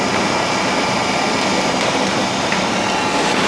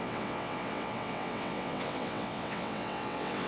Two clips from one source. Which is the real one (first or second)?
first